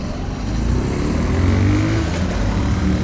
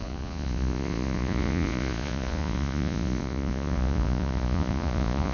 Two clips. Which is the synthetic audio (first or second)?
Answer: second